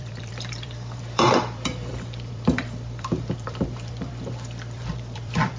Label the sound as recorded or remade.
remade